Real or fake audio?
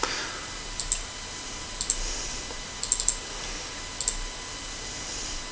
real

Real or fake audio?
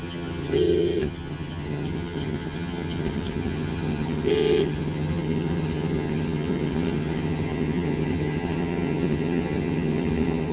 fake